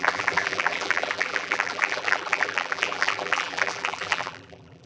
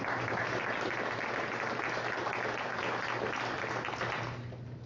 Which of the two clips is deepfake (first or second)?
first